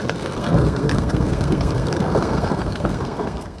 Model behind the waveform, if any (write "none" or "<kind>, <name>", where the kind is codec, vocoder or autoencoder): codec, SNAC